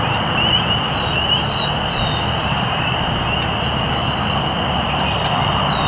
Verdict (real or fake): real